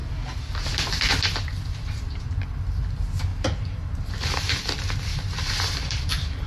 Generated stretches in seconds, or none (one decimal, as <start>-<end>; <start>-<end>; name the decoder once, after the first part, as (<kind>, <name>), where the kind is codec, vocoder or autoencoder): 1.5-2.4 (vocoder, BigVGAN v2); 3.3-4.1; 5.1-6.1